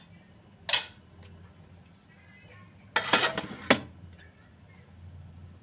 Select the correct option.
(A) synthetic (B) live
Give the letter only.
B